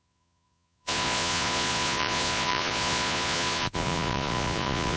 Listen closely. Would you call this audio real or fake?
fake